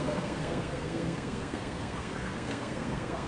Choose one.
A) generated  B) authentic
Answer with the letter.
A